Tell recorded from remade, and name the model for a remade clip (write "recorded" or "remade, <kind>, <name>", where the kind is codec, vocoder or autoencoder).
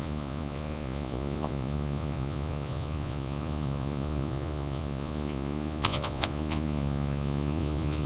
remade, vocoder, Vocos